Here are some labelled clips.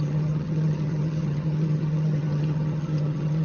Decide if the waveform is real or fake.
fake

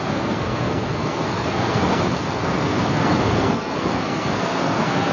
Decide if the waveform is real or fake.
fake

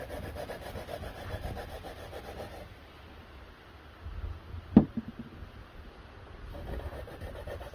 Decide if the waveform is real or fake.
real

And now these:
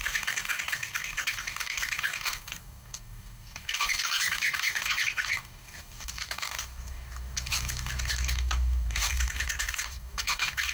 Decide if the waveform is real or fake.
fake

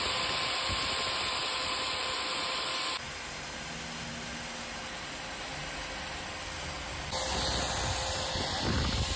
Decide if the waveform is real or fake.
real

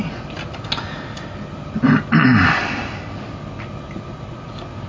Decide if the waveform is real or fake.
real